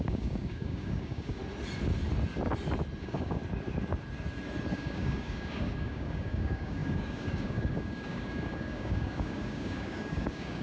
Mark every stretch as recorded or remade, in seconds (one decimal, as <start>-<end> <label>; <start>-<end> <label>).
0.0-1.4 remade; 1.4-3.0 recorded; 3.0-3.4 remade; 3.4-4.7 recorded; 4.7-10.6 remade